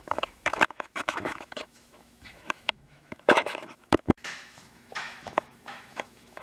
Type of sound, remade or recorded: remade